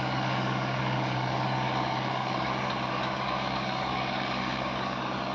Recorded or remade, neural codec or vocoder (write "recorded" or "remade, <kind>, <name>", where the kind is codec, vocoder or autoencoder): remade, codec, DAC